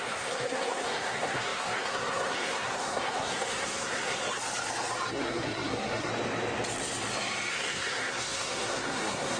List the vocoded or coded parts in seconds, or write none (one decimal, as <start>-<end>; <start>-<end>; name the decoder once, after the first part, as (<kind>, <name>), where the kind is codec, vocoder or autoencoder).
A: 0.0-4.2 (codec, SNAC); 5.1-6.1; 7.5-9.4